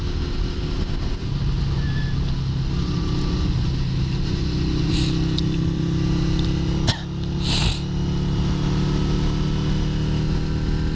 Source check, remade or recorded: recorded